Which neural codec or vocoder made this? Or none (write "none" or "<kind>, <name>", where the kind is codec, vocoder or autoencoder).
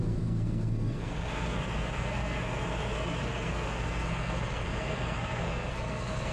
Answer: codec, SNAC